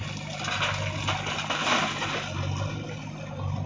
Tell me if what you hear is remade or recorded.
recorded